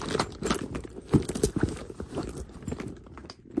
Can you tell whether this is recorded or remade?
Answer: recorded